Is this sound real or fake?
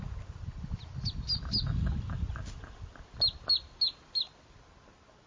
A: real